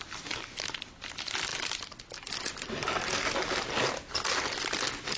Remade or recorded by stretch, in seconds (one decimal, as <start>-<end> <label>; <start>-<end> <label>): 0.0-5.2 recorded